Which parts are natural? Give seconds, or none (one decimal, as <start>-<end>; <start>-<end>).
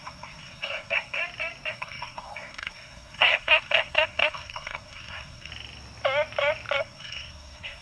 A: 1.2-1.7; 5.5-6.8